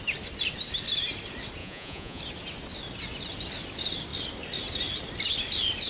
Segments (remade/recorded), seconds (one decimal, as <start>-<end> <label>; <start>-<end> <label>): 0.0-1.6 recorded; 1.6-2.2 remade; 2.2-5.9 recorded

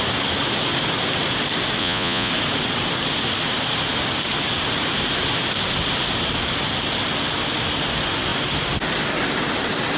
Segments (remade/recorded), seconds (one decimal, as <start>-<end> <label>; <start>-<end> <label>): 0.0-1.8 recorded; 1.8-2.3 remade; 2.3-10.0 recorded

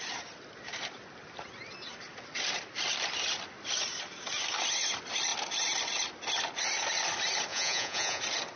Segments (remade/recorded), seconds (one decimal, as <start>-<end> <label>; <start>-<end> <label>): 0.0-7.5 recorded; 7.5-8.2 remade; 8.2-8.6 recorded

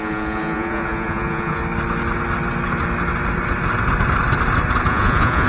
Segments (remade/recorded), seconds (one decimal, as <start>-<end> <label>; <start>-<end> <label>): 0.0-1.6 remade; 1.6-4.9 recorded; 4.9-5.5 remade

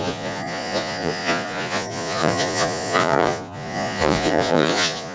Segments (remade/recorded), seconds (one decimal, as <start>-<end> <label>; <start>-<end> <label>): 0.0-5.1 remade